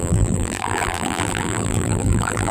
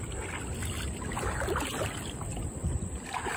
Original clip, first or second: second